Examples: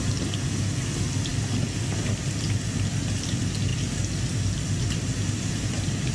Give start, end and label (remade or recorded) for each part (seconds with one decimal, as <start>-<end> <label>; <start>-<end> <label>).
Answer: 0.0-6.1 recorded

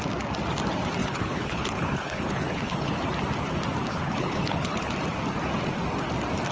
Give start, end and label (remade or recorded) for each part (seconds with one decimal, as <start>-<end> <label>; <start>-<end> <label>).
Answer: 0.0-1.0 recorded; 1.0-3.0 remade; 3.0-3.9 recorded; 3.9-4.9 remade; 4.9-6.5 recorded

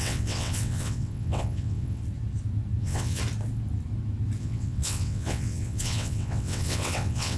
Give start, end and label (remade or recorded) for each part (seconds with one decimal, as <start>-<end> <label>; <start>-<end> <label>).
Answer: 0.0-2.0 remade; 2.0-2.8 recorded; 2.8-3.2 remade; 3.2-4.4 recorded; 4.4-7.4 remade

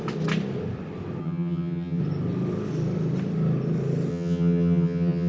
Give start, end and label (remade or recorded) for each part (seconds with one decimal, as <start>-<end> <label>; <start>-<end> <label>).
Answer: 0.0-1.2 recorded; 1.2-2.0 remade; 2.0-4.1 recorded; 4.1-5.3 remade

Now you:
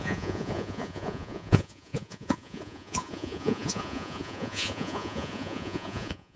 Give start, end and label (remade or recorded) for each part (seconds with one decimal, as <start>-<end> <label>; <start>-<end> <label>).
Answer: 0.0-6.4 remade